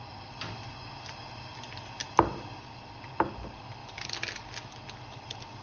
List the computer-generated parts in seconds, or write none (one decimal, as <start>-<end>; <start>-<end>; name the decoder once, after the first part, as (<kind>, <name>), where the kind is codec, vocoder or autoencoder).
none